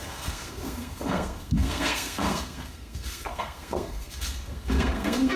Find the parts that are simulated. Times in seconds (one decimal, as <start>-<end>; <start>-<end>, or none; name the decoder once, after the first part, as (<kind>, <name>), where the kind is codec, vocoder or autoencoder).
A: 0.0-5.4 (codec, SNAC)